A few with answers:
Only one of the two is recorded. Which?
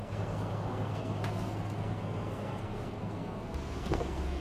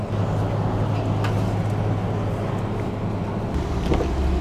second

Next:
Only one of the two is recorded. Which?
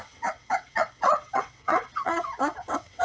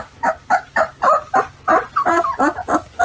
second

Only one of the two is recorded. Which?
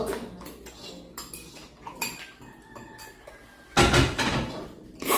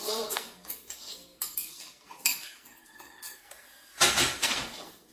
first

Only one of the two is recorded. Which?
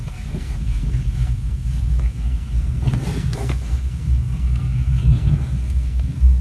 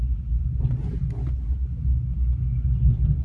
second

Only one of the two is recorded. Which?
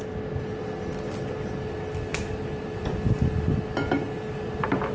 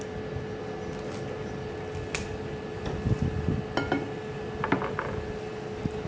second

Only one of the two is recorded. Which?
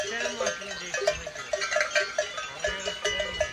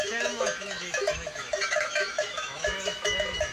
first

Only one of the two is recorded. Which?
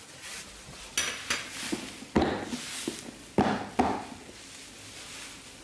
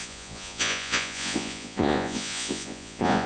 first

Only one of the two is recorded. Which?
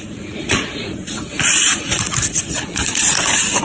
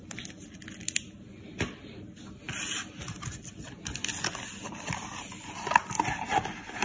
second